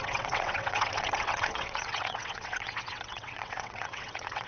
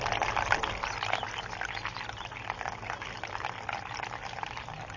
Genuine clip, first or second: second